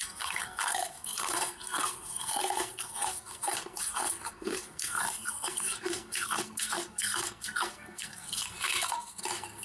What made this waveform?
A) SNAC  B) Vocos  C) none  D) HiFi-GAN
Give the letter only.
A